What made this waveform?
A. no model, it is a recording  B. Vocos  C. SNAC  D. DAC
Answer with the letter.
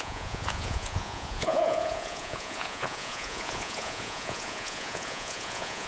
B